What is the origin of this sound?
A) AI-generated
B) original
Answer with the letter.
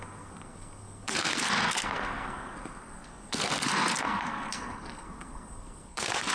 A